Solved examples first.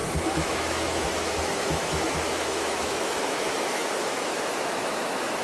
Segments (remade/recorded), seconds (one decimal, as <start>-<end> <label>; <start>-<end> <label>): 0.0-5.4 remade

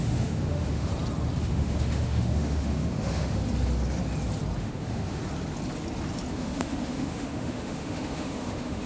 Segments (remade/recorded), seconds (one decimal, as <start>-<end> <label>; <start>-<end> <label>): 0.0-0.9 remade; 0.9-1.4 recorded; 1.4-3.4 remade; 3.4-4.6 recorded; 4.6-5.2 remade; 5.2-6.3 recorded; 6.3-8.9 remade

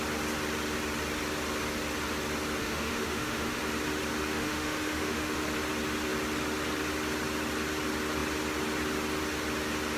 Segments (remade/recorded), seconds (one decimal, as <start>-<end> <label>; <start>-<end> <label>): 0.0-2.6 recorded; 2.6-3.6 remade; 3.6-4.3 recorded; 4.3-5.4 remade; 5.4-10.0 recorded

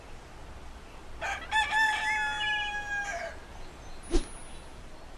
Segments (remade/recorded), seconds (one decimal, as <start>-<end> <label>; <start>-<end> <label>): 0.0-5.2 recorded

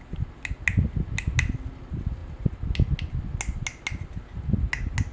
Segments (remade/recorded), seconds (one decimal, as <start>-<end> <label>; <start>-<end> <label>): 0.0-5.1 recorded